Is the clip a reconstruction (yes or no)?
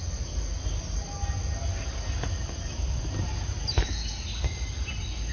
no